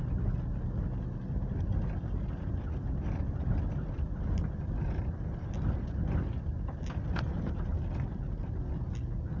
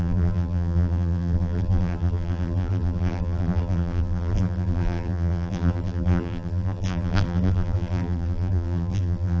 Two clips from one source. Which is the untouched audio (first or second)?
first